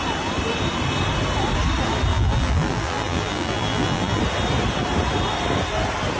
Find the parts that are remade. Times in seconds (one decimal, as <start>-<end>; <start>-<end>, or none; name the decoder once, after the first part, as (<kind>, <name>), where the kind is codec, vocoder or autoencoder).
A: 2.1-4.2 (vocoder, BigVGAN v2)